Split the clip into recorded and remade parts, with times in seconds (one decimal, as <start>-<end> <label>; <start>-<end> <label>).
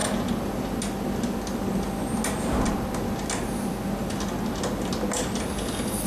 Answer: 0.0-6.1 recorded